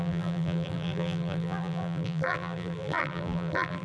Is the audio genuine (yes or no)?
no